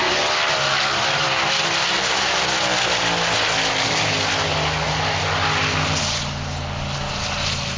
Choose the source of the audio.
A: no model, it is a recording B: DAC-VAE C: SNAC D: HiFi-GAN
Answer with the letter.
A